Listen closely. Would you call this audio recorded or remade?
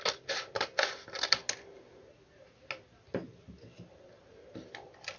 recorded